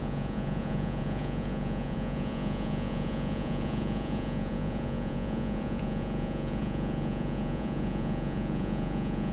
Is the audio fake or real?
fake